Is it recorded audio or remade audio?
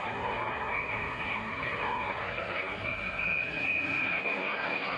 remade